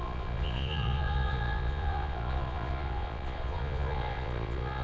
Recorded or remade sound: remade